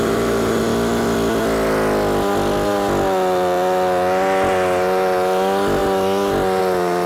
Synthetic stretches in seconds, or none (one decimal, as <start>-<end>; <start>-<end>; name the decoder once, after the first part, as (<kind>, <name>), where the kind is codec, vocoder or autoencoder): 0.0-0.6 (vocoder, BigVGAN v2)